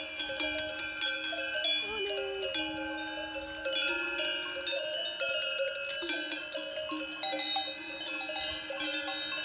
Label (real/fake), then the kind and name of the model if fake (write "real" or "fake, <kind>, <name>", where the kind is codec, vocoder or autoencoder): real